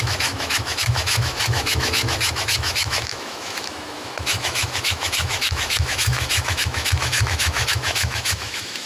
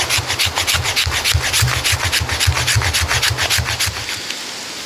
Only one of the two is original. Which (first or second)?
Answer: second